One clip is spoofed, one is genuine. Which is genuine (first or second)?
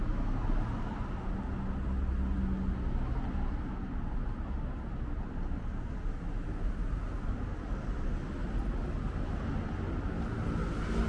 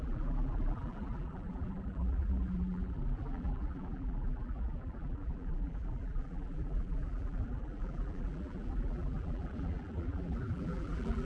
first